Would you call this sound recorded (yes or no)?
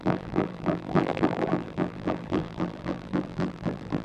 no